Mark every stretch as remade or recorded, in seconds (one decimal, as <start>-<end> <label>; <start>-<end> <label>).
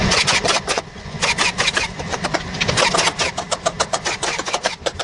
0.0-2.5 remade; 2.5-3.9 recorded; 3.9-5.0 remade